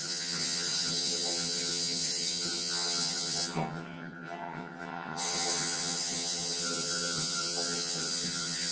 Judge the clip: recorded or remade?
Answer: remade